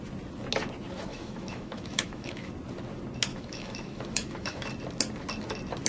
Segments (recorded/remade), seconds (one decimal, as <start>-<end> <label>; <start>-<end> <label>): 0.0-1.1 recorded; 1.1-2.5 remade; 2.5-3.3 recorded; 3.3-4.7 remade; 4.7-5.9 recorded